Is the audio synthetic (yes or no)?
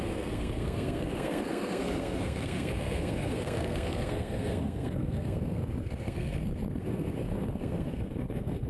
yes